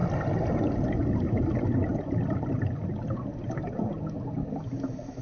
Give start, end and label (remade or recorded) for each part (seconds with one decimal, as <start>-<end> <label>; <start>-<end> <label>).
0.0-5.2 recorded